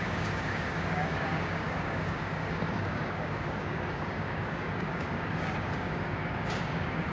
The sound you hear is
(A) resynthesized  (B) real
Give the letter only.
A